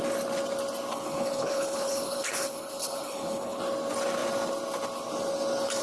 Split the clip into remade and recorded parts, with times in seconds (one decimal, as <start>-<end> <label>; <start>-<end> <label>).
0.0-0.9 recorded; 0.9-3.6 remade; 3.6-5.8 recorded